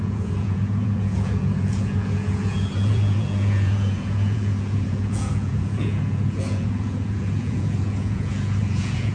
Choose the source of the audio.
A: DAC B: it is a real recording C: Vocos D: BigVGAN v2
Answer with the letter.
C